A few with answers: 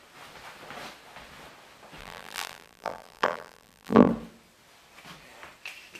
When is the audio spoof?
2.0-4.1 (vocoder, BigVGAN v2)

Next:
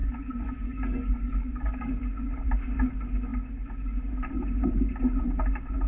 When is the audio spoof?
0.0-1.9 (codec, DAC)